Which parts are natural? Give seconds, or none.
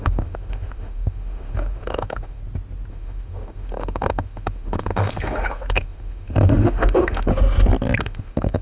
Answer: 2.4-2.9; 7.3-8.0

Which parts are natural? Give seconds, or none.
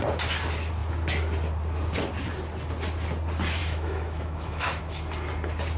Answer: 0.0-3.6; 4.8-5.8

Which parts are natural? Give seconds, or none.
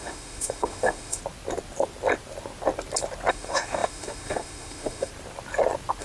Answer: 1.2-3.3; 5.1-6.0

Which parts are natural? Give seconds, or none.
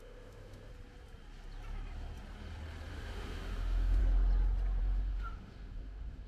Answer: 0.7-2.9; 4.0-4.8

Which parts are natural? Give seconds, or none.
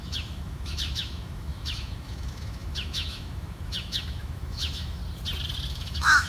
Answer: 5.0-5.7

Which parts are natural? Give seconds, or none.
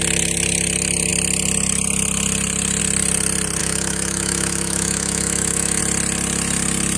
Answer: 0.0-3.6; 5.8-7.0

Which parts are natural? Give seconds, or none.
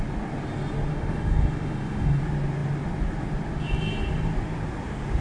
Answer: 0.0-0.9; 2.2-5.2